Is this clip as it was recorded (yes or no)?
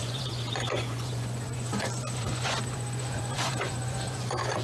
no